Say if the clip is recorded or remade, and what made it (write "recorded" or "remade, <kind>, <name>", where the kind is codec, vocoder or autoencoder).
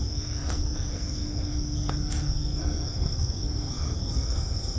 remade, codec, SNAC